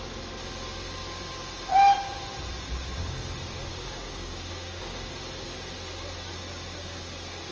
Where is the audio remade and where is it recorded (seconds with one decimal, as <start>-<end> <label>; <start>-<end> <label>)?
0.0-3.7 recorded; 3.7-5.1 remade; 5.1-7.5 recorded